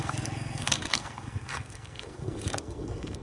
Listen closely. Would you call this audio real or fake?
fake